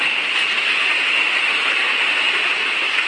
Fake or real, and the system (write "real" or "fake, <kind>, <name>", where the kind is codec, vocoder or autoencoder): real